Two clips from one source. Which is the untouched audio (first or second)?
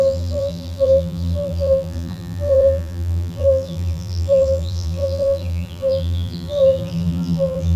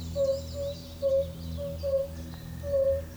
second